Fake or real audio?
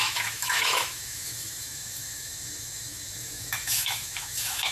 fake